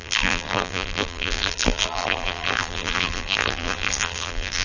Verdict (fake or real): fake